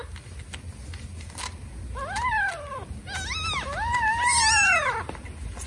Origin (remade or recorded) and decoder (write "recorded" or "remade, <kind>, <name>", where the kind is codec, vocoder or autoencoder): recorded